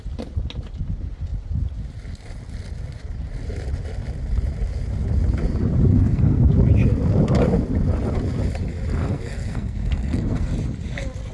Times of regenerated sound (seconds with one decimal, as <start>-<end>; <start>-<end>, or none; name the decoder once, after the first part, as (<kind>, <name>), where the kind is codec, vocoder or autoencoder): 5.9-6.5 (codec, SNAC); 9.0-10.5